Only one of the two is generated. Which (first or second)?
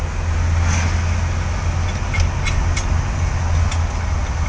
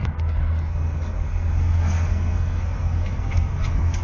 second